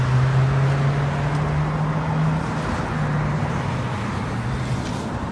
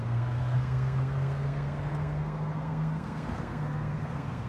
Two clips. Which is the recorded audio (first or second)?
first